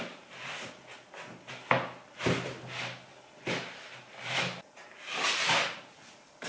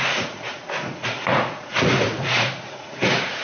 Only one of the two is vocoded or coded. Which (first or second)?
second